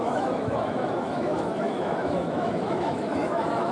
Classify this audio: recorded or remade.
remade